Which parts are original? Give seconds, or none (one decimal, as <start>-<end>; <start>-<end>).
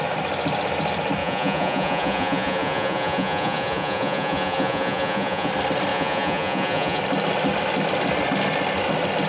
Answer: 0.0-1.2; 5.5-5.9; 7.0-9.3